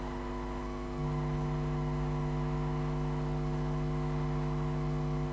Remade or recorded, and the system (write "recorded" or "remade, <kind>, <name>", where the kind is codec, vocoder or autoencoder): recorded